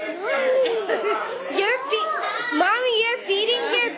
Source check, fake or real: real